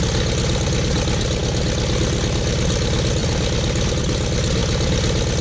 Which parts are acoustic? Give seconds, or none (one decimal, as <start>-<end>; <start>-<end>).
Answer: 0.0-5.4